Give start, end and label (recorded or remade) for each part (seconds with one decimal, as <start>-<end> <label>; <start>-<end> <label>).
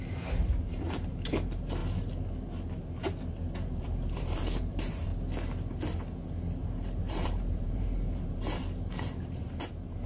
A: 0.0-1.8 remade; 1.8-3.7 recorded; 3.7-5.1 remade; 5.1-6.6 recorded; 6.6-10.1 remade